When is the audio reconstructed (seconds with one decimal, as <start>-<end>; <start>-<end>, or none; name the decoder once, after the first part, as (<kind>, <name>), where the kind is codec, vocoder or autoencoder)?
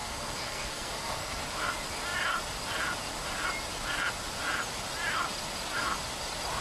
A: 0.0-1.4 (codec, SNAC)